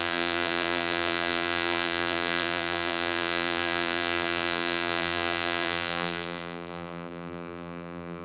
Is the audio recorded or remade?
remade